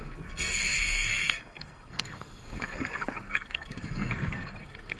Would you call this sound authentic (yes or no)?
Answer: no